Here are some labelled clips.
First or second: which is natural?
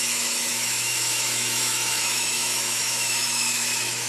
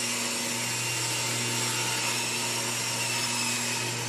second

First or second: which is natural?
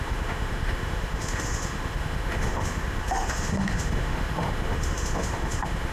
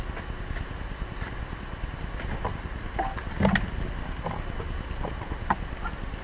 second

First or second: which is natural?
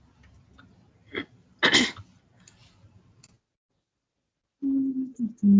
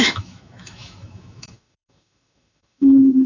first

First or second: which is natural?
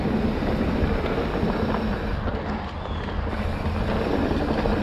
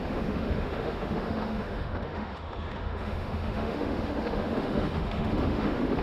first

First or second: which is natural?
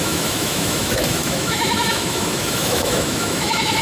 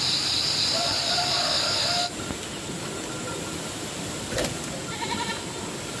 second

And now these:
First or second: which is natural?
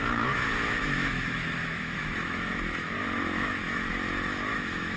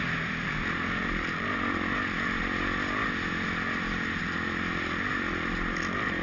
second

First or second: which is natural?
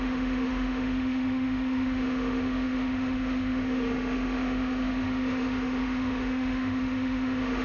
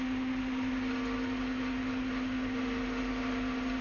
second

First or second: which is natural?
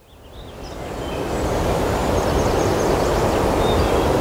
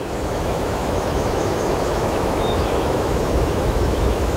first